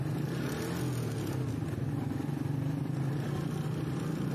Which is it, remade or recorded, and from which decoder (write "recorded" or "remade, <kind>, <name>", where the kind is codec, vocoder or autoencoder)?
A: recorded